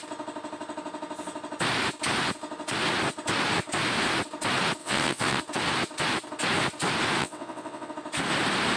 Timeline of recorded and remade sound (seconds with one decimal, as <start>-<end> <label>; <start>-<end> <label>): 0.0-4.8 recorded; 4.8-5.4 remade; 5.4-7.2 recorded; 7.2-7.9 remade; 7.9-8.8 recorded